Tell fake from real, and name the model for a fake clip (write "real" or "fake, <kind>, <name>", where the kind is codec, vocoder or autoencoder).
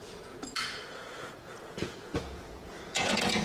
fake, vocoder, Vocos